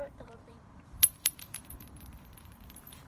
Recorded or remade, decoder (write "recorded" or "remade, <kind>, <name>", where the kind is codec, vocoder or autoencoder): remade, vocoder, BigVGAN v2